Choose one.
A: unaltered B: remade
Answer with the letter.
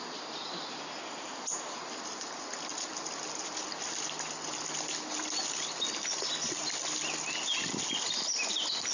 A